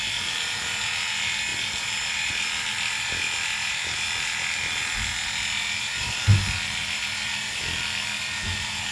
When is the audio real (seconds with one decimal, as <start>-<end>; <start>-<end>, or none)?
0.0-1.5; 2.3-6.8; 7.6-8.9